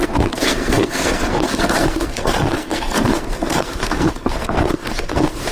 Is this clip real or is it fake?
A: fake